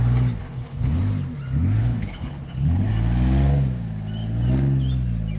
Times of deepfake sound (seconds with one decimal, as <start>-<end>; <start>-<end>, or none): 0.4-1.0; 1.8-2.9